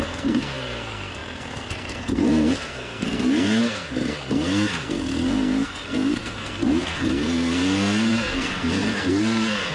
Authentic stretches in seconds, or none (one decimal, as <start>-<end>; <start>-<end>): none